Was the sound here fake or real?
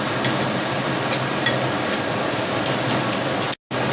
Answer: real